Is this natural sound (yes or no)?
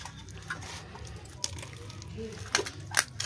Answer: yes